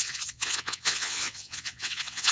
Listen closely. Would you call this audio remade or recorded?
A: remade